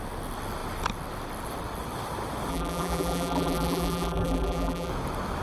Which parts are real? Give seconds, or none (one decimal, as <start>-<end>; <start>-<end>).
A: 0.0-2.5; 4.9-5.4